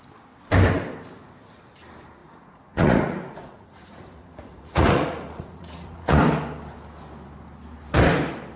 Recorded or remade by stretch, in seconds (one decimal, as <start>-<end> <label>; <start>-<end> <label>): 0.0-2.2 recorded; 2.2-6.2 remade; 6.2-8.6 recorded